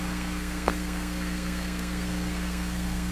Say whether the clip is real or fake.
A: fake